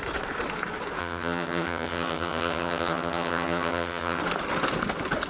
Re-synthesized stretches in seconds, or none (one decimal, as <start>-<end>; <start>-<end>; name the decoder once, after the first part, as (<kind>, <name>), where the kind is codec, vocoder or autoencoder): 1.0-4.2 (vocoder, HiFi-GAN)

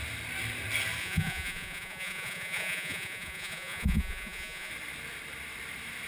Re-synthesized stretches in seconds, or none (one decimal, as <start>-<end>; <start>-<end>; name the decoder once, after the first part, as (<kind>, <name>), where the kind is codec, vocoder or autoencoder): 1.0-4.7 (vocoder, Vocos)

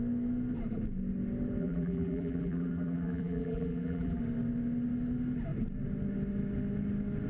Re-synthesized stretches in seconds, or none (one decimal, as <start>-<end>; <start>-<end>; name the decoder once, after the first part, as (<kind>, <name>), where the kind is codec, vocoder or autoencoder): 1.6-4.2 (vocoder, BigVGAN v2)

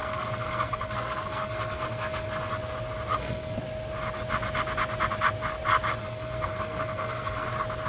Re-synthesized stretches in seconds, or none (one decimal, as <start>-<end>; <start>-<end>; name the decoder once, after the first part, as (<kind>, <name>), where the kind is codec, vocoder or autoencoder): 0.0-2.4 (codec, SNAC); 3.1-3.6; 6.0-7.5

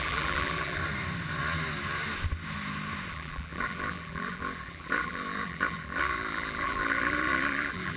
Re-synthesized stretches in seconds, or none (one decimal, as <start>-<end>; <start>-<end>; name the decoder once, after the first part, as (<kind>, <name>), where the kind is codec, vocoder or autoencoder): 0.0-0.8 (vocoder, BigVGAN v2); 3.1-8.0